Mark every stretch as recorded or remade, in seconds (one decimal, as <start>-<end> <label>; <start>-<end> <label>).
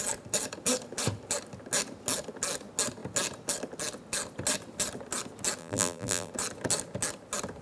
0.0-5.6 recorded; 5.6-6.3 remade; 6.3-7.6 recorded